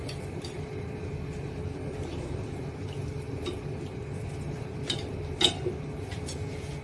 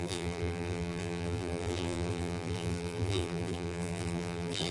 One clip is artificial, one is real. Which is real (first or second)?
first